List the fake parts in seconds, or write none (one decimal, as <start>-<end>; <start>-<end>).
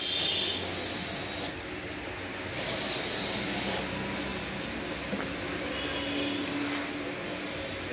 none